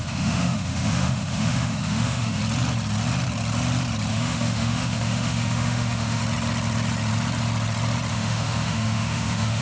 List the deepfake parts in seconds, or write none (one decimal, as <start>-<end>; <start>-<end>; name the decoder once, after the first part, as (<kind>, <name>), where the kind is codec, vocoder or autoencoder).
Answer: 0.0-2.4 (autoencoder, DAC-VAE); 4.1-6.2; 8.1-9.6